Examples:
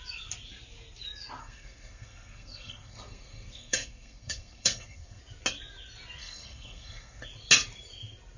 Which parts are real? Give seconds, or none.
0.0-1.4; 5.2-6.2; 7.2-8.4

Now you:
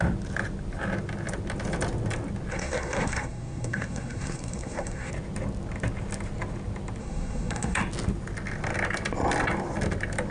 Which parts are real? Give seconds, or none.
0.0-2.5; 5.1-7.0; 7.8-10.3

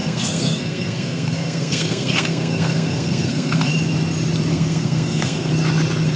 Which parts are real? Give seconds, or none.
3.7-4.5; 5.5-6.2

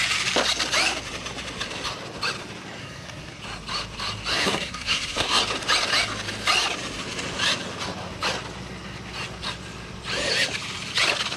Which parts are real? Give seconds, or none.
0.0-2.8; 3.4-4.3; 5.4-11.4

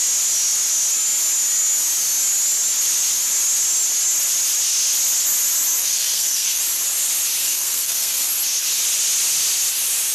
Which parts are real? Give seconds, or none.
0.0-5.8; 6.6-7.4; 8.3-10.1

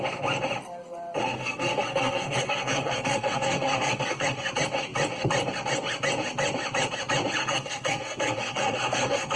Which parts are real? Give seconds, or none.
0.0-1.2; 4.5-7.4